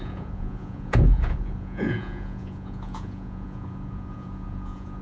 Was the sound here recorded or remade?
remade